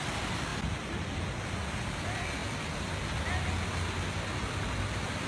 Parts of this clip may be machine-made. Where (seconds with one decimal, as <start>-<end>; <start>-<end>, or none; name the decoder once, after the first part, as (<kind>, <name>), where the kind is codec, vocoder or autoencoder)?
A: none